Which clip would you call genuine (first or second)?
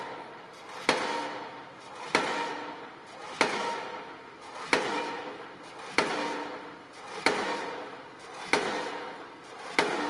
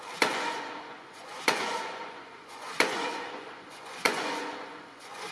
first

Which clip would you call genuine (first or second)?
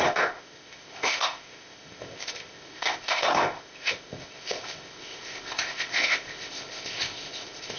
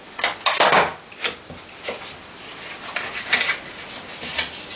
second